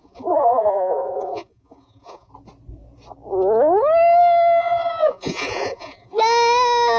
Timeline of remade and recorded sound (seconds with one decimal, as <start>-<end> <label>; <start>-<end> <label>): 0.0-2.3 remade; 2.3-4.6 recorded; 4.6-6.2 remade; 6.2-7.0 recorded